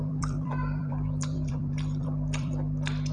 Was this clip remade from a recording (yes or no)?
yes